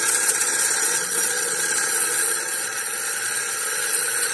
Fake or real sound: fake